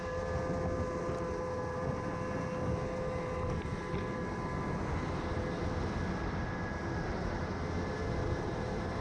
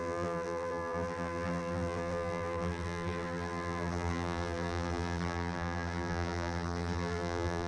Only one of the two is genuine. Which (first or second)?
first